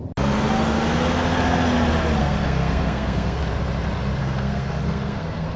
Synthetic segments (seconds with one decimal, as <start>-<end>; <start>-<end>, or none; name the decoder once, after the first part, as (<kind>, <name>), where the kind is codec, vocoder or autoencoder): 2.2-3.4 (codec, SNAC); 4.2-5.6